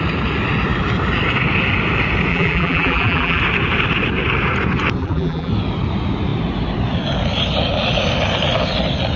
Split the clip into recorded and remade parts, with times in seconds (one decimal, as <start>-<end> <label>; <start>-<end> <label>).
0.0-2.3 recorded; 2.3-3.4 remade; 3.4-5.0 recorded; 5.0-5.5 remade; 5.5-9.2 recorded